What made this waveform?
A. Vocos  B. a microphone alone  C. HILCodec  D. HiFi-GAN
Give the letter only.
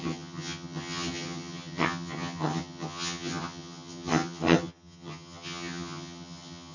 D